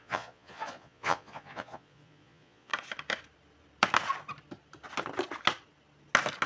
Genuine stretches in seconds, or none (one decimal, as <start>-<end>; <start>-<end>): 2.7-6.5